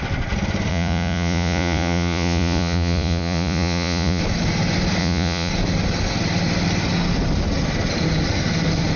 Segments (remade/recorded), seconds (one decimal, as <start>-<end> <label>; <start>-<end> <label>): 0.0-0.7 recorded; 0.7-4.2 remade; 4.2-5.0 recorded; 5.0-5.5 remade; 5.5-9.0 recorded